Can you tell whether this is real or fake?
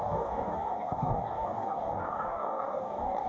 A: fake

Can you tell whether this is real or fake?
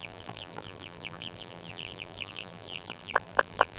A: fake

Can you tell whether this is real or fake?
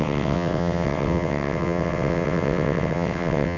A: fake